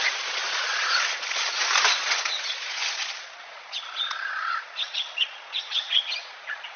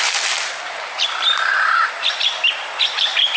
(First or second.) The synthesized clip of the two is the first